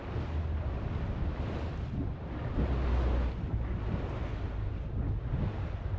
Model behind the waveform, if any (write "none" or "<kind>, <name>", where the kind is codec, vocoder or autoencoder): none